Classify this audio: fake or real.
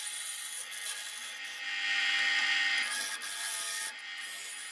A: real